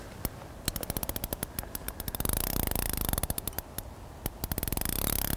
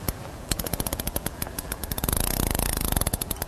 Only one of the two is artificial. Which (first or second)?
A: second